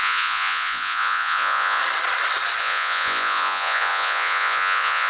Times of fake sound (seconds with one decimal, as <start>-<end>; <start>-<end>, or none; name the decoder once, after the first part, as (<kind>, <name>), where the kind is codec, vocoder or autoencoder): 0.0-1.8 (vocoder, Vocos); 2.6-5.1